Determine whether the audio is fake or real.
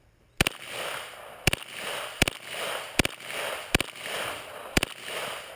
real